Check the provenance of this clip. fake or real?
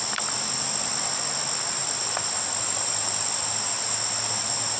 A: real